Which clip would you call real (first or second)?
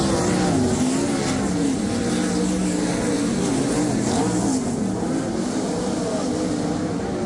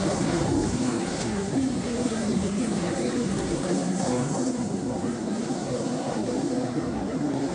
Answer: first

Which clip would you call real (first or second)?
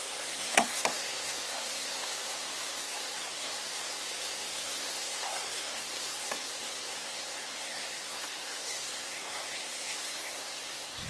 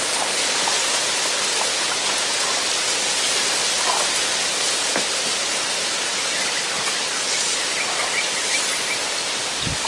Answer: second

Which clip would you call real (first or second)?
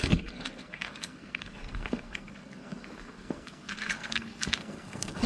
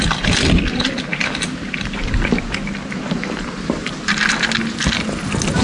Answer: second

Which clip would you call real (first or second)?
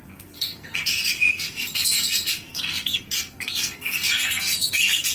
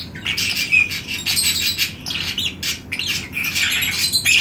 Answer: second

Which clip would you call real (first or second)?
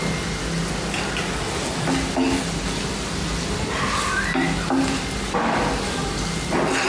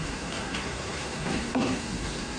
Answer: first